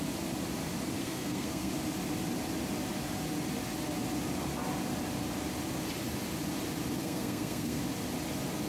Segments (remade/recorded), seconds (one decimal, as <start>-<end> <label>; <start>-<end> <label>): 0.0-1.0 recorded; 1.0-1.7 remade; 1.7-7.0 recorded; 7.0-7.8 remade; 7.8-8.7 recorded